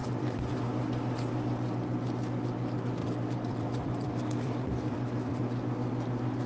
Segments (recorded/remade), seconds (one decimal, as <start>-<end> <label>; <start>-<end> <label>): 0.0-0.5 remade; 0.5-3.0 recorded; 3.0-5.4 remade; 5.4-6.5 recorded